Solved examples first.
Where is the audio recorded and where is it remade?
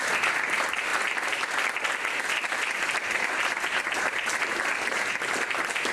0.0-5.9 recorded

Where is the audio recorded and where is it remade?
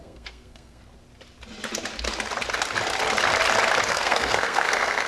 0.0-0.8 remade; 0.8-3.9 recorded; 3.9-5.1 remade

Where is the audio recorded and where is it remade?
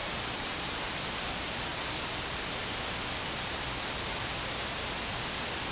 0.0-1.7 remade; 1.7-5.1 recorded; 5.1-5.7 remade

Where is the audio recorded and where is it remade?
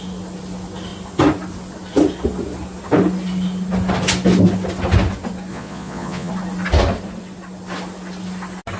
0.0-5.5 recorded; 5.5-6.3 remade; 6.3-8.8 recorded